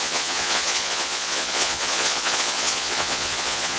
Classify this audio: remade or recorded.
remade